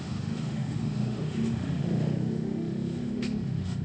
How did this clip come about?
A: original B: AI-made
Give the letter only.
B